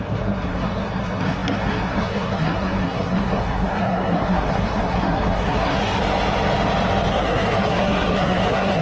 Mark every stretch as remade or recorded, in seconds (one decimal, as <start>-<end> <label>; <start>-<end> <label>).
0.0-6.0 remade; 6.0-7.1 recorded; 7.1-8.8 remade